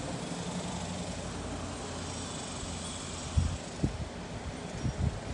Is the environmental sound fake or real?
real